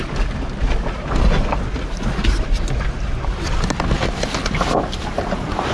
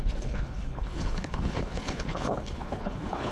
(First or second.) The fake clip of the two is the second